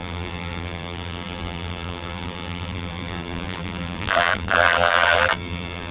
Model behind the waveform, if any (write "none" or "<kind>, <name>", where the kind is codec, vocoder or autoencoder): vocoder, BigVGAN v2